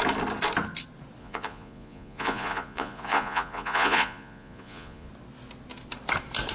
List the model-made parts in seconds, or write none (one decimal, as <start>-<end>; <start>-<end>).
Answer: 1.2-5.1